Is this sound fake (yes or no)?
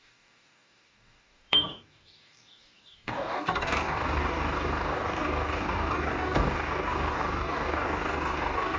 yes